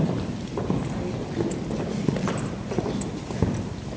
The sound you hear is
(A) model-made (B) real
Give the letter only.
B